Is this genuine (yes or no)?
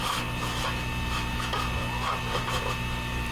yes